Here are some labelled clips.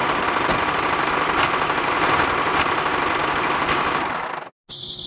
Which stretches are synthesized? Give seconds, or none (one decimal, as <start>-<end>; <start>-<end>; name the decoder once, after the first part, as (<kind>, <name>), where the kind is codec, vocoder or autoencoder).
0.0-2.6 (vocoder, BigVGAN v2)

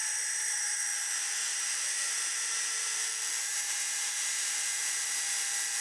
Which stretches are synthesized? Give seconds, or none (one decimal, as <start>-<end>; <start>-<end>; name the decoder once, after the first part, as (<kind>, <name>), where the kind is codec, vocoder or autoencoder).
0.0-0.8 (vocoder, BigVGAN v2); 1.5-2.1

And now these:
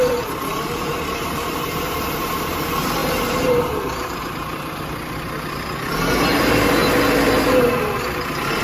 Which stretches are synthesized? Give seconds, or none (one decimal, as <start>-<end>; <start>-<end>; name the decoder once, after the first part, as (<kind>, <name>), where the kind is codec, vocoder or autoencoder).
0.0-6.8 (vocoder, BigVGAN v2); 8.0-8.6